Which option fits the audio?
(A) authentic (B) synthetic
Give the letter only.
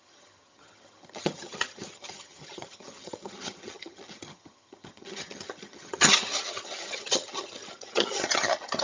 B